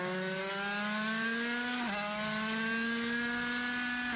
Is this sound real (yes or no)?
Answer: yes